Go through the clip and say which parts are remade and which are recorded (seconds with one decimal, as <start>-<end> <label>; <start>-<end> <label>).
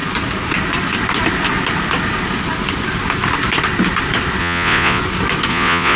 0.0-4.4 recorded; 4.4-5.0 remade; 5.0-5.5 recorded; 5.5-6.0 remade